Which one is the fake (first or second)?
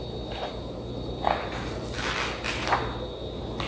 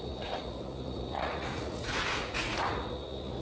second